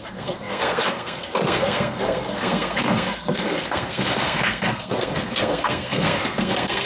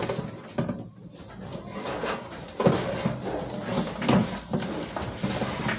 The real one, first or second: second